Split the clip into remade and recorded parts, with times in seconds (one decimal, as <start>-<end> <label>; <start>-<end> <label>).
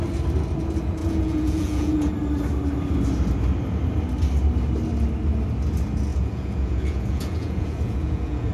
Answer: 0.0-1.0 recorded; 1.0-2.1 remade; 2.1-6.1 recorded; 6.1-8.5 remade